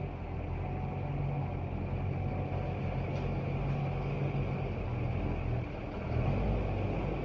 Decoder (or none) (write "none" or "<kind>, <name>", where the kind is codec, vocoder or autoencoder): none